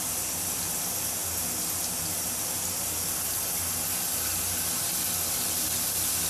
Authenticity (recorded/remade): recorded